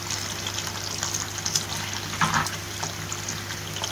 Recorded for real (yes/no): yes